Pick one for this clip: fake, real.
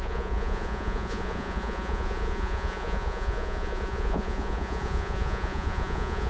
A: fake